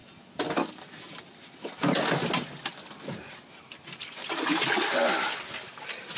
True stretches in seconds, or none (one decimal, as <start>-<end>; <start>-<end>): 0.0-6.2